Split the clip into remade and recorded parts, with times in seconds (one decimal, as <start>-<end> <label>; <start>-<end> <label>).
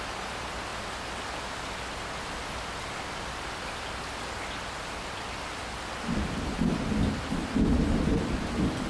0.0-8.9 recorded